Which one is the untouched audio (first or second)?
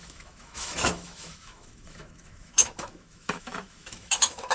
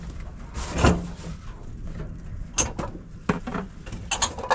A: second